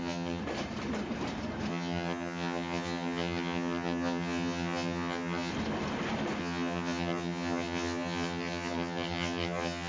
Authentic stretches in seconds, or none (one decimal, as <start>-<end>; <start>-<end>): 0.4-1.7; 5.5-6.4